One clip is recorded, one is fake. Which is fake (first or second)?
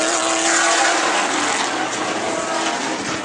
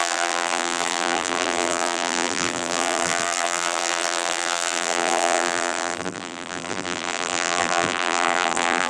second